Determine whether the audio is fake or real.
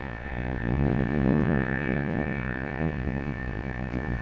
fake